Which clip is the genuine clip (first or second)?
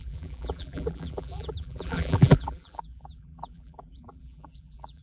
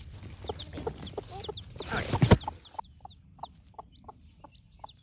second